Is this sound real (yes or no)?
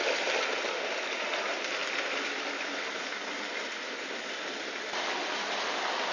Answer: yes